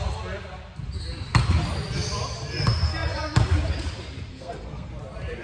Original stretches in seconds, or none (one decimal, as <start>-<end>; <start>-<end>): 0.0-4.3; 4.9-5.4